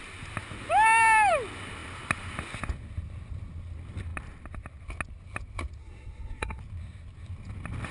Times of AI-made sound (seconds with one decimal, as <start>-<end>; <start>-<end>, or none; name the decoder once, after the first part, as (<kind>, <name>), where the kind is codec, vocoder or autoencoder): 5.8-6.6 (codec, SNAC)